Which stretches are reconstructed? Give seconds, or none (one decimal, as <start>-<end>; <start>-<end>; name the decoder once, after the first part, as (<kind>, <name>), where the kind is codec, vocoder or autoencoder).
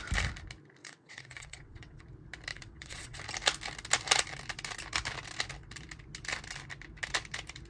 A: 0.8-2.0 (vocoder, WaveNeXt); 2.5-3.2